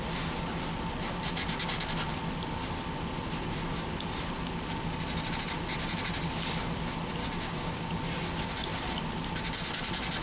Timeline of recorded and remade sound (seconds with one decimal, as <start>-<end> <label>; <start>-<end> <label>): 0.0-7.2 recorded; 7.2-7.9 remade; 7.9-10.2 recorded